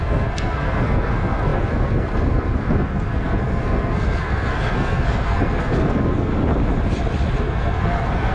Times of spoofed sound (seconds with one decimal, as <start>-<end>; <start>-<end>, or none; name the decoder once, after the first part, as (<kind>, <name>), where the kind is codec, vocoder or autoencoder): 0.0-6.3 (codec, SNAC); 7.4-8.3